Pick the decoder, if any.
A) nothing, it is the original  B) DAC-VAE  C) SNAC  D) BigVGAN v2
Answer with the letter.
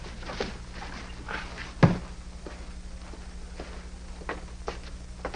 A